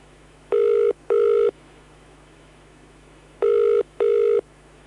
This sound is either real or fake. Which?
fake